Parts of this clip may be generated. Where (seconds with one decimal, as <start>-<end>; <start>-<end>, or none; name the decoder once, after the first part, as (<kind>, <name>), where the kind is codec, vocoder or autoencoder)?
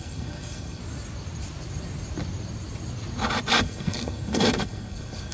0.0-0.8 (codec, SNAC); 3.6-5.3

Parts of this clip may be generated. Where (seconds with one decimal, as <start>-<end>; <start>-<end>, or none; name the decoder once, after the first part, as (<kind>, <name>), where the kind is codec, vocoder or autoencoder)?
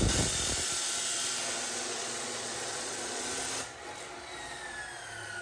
1.5-3.3 (vocoder, Vocos)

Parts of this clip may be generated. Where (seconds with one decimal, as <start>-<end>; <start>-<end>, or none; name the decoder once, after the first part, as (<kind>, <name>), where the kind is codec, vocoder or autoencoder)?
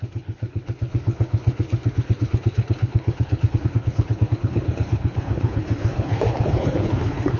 0.0-7.4 (codec, HILCodec)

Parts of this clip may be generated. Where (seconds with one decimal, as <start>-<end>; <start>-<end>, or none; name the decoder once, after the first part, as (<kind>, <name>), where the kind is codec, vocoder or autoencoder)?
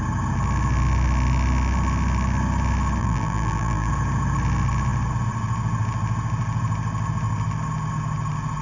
3.0-3.9 (vocoder, BigVGAN v2)